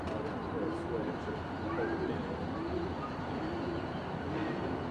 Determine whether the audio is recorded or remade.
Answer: recorded